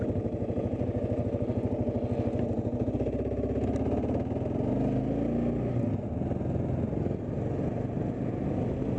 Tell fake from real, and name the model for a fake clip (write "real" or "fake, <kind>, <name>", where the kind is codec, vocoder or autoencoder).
real